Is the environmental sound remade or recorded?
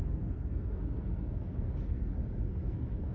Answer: remade